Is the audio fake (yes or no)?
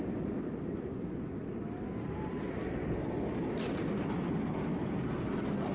no